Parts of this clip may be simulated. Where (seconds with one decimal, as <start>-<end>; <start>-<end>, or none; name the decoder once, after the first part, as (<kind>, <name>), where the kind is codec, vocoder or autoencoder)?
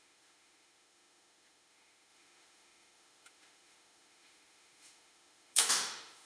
0.0-6.3 (autoencoder, DAC-VAE)